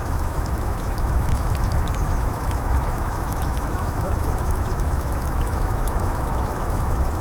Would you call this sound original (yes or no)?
no